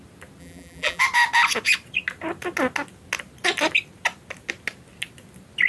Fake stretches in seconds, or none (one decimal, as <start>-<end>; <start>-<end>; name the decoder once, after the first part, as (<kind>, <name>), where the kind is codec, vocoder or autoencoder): 0.4-1.0 (vocoder, BigVGAN v2)